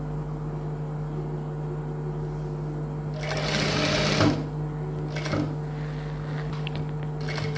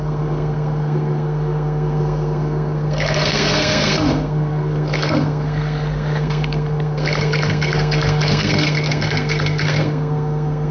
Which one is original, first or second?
first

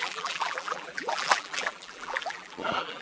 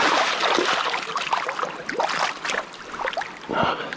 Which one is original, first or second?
second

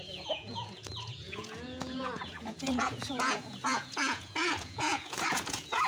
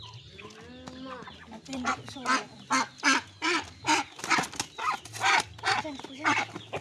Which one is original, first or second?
second